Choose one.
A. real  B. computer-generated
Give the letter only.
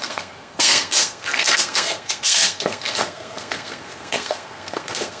B